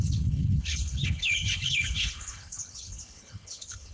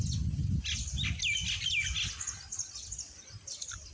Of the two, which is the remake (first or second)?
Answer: first